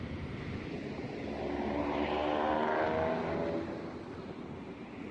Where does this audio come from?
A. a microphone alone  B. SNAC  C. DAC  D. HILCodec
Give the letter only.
A